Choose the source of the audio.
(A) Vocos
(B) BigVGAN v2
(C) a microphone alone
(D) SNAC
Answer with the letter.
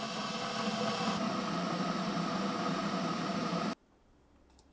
B